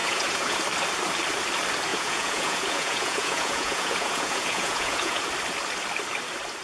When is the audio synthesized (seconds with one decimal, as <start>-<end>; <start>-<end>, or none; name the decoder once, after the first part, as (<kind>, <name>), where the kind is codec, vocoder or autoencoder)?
0.0-0.6 (vocoder, Vocos); 1.9-5.2